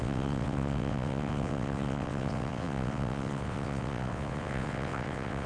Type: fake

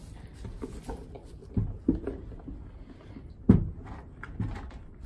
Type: real